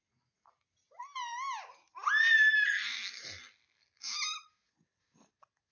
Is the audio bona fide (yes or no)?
yes